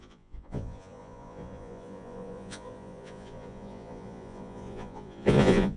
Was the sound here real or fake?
fake